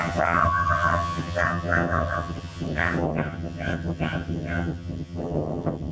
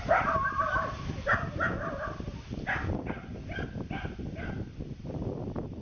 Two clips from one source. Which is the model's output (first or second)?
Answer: first